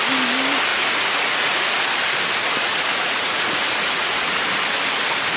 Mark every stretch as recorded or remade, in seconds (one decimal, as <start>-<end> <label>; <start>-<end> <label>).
0.0-0.7 recorded; 0.7-1.8 remade; 1.8-2.4 recorded; 2.4-3.4 remade; 3.4-3.8 recorded; 3.8-4.4 remade; 4.4-5.4 recorded